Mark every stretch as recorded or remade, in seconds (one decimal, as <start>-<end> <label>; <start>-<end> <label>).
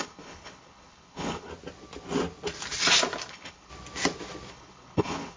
0.0-1.5 remade; 1.5-3.3 recorded; 3.3-3.7 remade; 3.7-4.5 recorded; 4.5-5.4 remade